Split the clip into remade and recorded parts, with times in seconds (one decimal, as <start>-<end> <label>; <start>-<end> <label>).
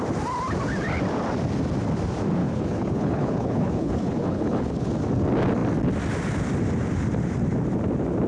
0.0-2.4 recorded; 2.4-4.9 remade; 4.9-8.3 recorded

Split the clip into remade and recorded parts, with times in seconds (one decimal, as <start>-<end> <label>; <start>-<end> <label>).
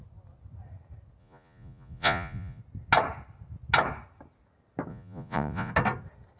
0.0-1.2 recorded; 1.2-2.6 remade; 2.6-4.9 recorded; 4.9-5.7 remade; 5.7-6.4 recorded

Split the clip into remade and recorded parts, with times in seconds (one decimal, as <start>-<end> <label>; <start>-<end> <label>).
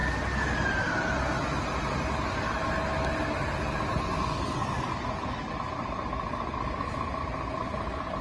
0.0-8.2 recorded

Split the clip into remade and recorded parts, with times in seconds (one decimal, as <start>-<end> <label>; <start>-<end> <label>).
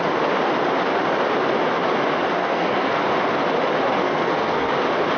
0.0-2.4 recorded; 2.4-3.0 remade; 3.0-4.0 recorded; 4.0-4.7 remade; 4.7-5.2 recorded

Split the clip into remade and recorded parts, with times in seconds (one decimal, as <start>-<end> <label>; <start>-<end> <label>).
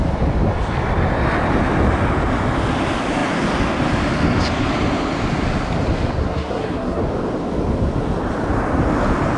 0.0-6.2 recorded; 6.2-7.0 remade; 7.0-9.4 recorded